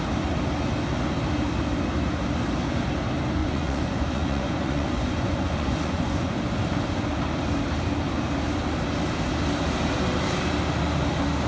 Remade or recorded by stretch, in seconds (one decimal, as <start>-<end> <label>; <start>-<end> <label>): 0.0-3.4 recorded; 3.4-6.3 remade; 6.3-11.5 recorded